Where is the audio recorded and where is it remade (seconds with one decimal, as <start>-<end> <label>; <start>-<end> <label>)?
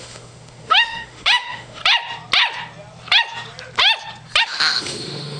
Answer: 0.0-1.8 remade; 1.8-4.4 recorded; 4.4-5.4 remade